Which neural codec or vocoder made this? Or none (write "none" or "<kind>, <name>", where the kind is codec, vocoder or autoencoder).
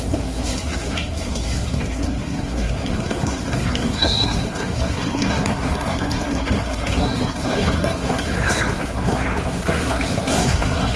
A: codec, SNAC